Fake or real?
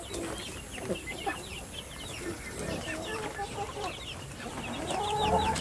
real